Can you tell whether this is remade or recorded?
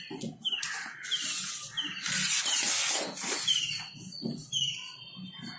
recorded